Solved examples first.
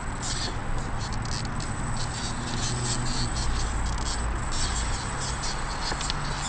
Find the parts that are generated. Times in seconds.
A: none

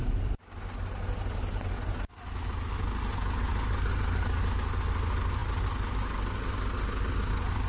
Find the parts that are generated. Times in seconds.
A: none